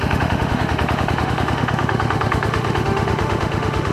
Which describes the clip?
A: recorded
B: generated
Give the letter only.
B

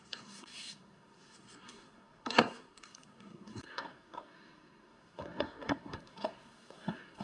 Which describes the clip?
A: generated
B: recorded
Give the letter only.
A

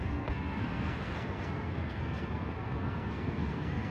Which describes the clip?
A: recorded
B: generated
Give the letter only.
B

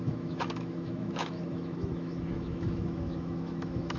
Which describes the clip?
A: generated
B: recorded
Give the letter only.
A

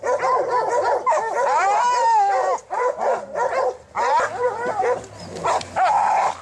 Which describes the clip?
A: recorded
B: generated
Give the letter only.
A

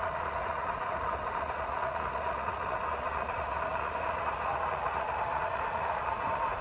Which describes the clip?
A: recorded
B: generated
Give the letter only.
B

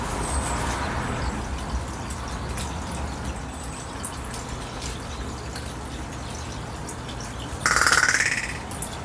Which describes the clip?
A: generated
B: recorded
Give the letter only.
B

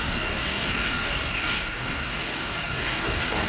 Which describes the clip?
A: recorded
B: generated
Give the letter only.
B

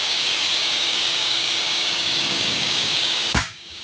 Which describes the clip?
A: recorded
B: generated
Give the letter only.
B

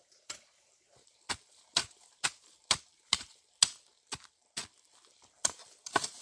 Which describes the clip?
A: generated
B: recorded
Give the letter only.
B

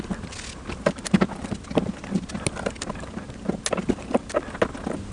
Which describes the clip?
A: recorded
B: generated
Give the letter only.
A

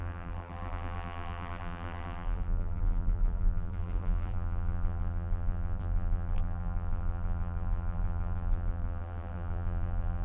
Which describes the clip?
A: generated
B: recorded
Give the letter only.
A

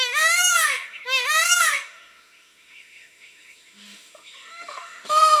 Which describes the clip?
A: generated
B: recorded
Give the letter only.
A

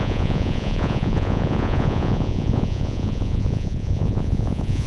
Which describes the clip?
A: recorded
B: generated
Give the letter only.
B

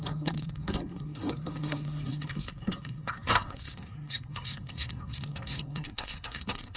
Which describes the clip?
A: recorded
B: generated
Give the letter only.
B